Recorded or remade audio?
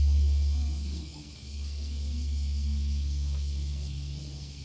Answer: remade